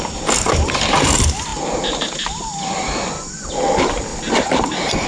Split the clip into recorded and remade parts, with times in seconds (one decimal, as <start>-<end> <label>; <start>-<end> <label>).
0.0-5.1 recorded